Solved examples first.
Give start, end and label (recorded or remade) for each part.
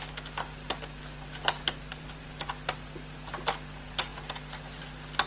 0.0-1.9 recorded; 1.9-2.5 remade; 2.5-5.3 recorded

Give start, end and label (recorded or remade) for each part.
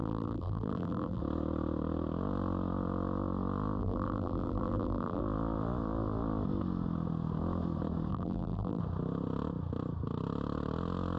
0.0-1.2 remade; 1.2-3.8 recorded; 3.8-5.2 remade; 5.2-8.1 recorded; 8.1-8.8 remade; 8.8-11.2 recorded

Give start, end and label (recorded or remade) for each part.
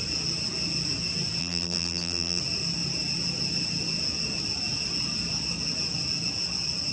0.0-1.4 recorded; 1.4-2.4 remade; 2.4-6.9 recorded